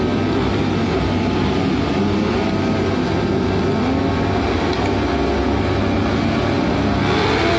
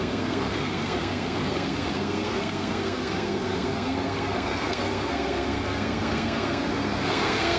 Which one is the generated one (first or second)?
second